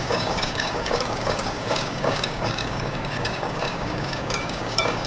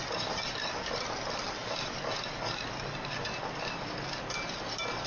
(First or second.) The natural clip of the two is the second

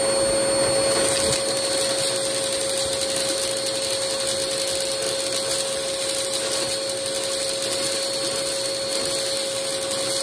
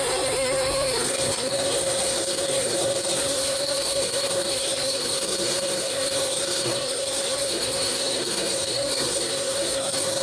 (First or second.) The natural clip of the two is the first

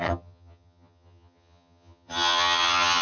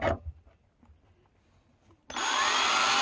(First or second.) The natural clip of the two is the second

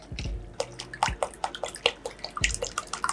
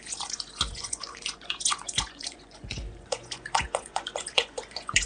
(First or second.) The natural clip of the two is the first